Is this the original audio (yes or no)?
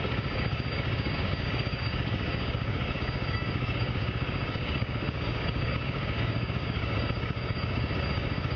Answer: no